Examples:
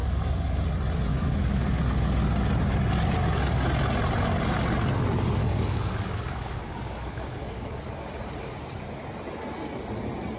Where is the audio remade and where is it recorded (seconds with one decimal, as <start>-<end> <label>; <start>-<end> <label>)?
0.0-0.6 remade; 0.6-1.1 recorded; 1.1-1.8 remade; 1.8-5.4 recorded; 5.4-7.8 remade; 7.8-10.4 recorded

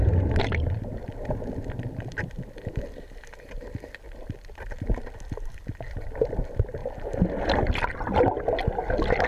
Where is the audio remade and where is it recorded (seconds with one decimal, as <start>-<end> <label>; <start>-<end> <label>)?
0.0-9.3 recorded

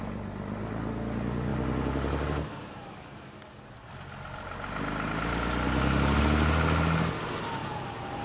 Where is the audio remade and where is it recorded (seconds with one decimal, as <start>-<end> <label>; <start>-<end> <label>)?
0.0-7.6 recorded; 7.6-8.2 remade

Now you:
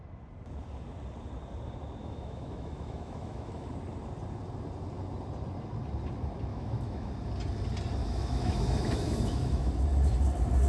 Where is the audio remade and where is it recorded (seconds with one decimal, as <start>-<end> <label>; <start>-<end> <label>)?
0.0-2.0 recorded; 2.0-3.7 remade; 3.7-6.5 recorded; 6.5-7.1 remade; 7.1-8.0 recorded; 8.0-9.7 remade; 9.7-10.7 recorded